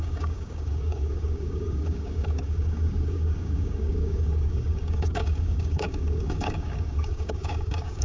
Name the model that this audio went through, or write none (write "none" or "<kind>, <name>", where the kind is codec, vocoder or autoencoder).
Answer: codec, DAC